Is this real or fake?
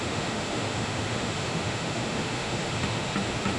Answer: fake